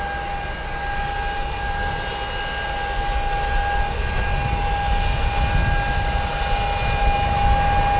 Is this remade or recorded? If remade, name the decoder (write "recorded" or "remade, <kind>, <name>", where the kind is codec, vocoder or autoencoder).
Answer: recorded